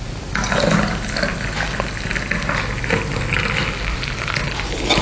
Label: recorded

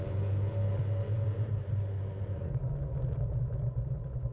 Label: recorded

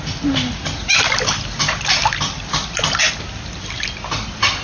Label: recorded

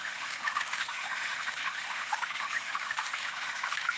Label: remade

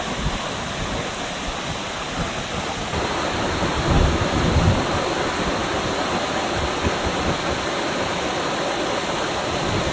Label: recorded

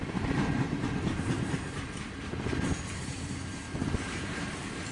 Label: remade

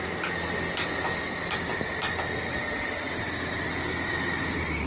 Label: recorded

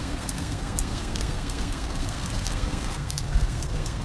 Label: remade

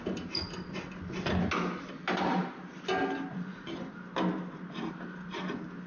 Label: recorded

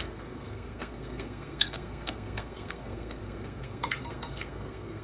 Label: remade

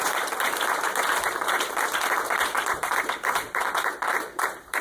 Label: remade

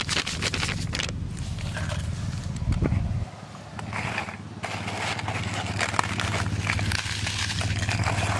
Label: recorded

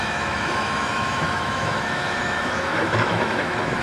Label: remade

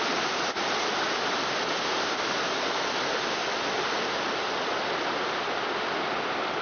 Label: recorded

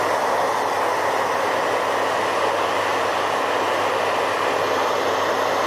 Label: recorded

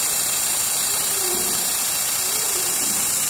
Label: recorded